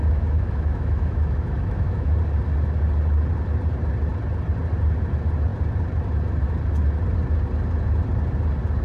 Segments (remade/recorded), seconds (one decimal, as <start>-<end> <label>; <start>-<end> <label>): 0.0-2.2 remade; 2.2-8.8 recorded